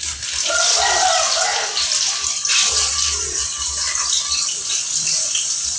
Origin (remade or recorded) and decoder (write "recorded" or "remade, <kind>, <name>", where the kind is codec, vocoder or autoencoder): recorded